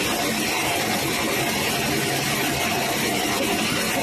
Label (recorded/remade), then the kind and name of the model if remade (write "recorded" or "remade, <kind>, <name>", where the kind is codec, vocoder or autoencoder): recorded